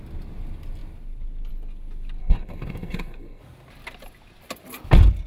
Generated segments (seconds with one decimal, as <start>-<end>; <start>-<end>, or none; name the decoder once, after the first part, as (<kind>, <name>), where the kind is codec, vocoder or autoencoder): 2.2-3.4 (codec, SNAC)